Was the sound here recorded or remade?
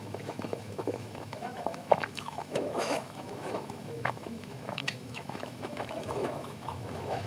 remade